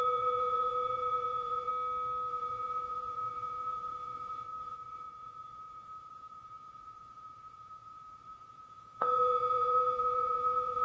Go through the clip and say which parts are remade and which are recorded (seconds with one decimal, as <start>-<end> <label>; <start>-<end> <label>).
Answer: 0.0-1.7 remade; 1.7-2.3 recorded; 2.3-10.8 remade